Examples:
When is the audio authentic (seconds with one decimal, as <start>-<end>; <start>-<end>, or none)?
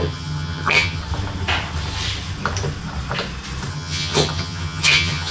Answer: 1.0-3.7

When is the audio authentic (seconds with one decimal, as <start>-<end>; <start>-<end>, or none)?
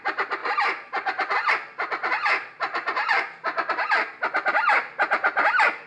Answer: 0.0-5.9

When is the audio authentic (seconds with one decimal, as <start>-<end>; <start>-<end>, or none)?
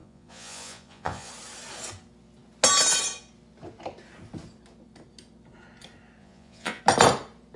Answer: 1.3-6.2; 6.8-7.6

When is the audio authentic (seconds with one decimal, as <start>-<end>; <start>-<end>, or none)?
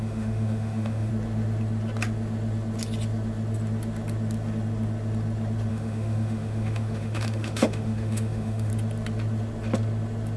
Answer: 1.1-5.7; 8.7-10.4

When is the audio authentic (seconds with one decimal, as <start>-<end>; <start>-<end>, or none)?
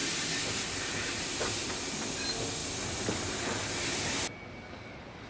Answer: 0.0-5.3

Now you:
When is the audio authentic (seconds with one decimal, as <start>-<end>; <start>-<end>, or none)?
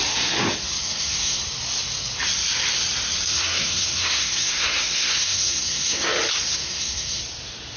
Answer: 0.0-0.8; 1.4-3.3; 6.1-6.6; 7.2-7.8